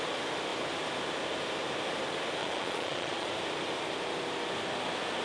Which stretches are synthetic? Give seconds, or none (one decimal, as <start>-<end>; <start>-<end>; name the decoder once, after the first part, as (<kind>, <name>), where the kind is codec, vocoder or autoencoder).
2.4-3.3 (vocoder, Vocos)

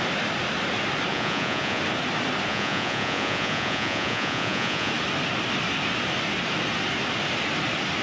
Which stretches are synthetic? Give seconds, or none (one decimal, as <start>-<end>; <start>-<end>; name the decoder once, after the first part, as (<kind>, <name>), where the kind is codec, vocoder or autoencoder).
1.1-1.8 (vocoder, Vocos); 2.5-4.9

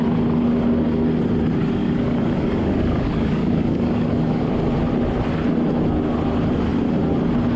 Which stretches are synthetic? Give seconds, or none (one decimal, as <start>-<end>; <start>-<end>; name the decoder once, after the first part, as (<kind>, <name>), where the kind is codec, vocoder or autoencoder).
1.8-4.5 (codec, DAC)

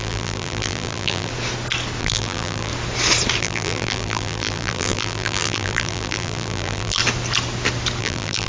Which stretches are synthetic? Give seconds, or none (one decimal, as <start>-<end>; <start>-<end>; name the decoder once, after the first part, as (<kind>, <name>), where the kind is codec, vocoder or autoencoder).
0.0-1.3 (vocoder, BigVGAN v2); 2.0-2.7; 3.4-7.0; 8.0-8.5